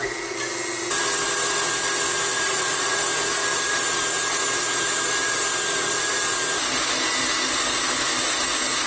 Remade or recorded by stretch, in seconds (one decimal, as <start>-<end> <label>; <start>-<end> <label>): 0.0-2.3 recorded; 2.3-3.0 remade; 3.0-8.9 recorded